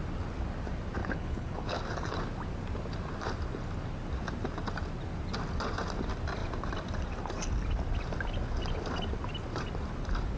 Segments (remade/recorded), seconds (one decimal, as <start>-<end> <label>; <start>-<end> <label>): 0.0-1.0 recorded; 1.0-1.8 remade; 1.8-10.4 recorded